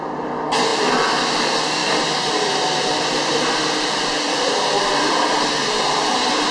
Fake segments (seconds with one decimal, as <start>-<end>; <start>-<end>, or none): 1.8-5.3